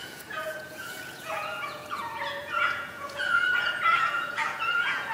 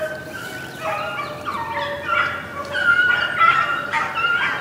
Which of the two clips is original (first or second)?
second